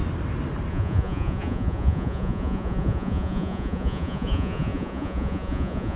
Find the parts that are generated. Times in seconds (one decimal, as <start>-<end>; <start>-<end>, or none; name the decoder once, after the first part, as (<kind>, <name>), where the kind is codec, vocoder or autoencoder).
0.7-6.0 (vocoder, Vocos)